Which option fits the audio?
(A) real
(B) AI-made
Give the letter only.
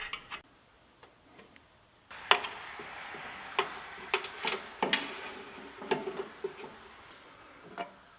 A